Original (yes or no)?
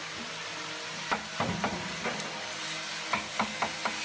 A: yes